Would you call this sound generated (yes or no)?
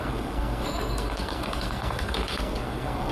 yes